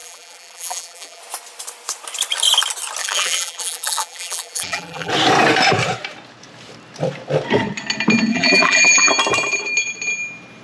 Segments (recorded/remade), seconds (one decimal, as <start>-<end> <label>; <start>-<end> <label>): 0.0-1.2 remade; 1.2-3.0 recorded; 3.0-5.1 remade; 5.1-8.3 recorded; 8.3-9.1 remade; 9.1-10.6 recorded

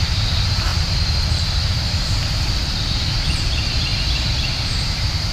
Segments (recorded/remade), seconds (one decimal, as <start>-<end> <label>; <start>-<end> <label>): 0.0-0.7 remade; 0.7-1.3 recorded; 1.3-3.9 remade; 3.9-4.6 recorded; 4.6-5.3 remade